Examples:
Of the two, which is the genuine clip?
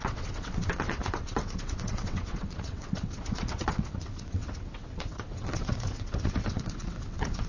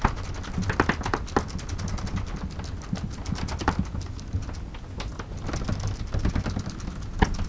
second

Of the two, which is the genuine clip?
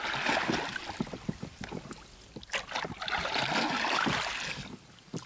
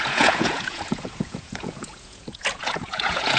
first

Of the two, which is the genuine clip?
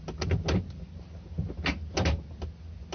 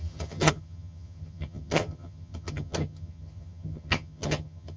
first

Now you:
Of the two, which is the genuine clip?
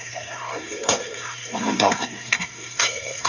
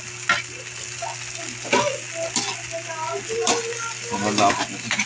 second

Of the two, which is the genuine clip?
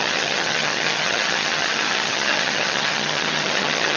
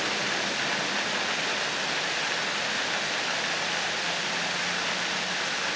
second